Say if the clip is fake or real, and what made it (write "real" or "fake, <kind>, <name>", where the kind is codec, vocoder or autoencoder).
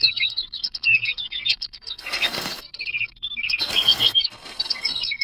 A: fake, codec, SNAC